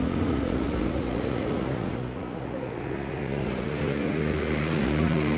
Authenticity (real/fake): fake